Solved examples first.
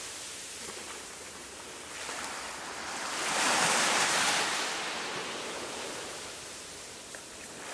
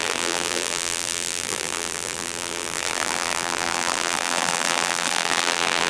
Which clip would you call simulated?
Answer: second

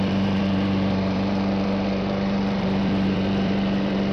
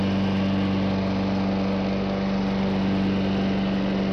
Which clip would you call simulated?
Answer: first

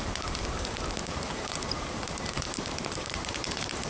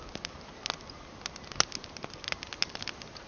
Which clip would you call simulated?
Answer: first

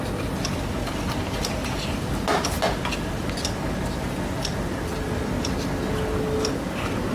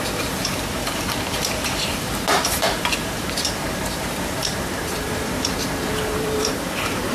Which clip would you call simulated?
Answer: second